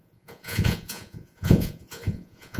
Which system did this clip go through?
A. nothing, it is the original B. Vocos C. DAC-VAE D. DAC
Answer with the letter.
B